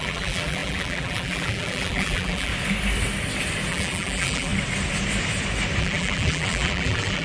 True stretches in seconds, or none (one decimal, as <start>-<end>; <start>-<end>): 2.5-3.7; 4.5-5.8